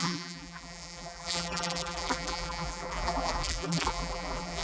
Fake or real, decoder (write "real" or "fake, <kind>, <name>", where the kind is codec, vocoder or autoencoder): fake, vocoder, BigVGAN v2